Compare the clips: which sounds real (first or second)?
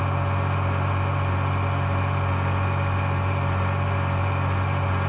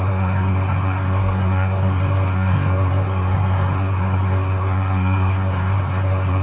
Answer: first